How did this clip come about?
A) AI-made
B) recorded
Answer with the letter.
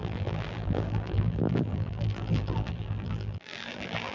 A